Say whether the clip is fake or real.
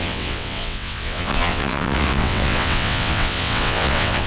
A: fake